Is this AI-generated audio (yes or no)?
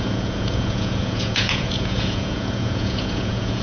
yes